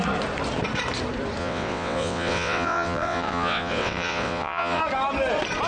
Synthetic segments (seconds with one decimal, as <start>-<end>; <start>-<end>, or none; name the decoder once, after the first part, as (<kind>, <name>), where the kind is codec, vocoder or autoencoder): 1.4-4.8 (vocoder, WaveNeXt)